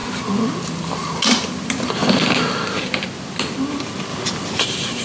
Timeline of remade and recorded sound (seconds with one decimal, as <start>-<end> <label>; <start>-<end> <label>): 0.0-5.0 recorded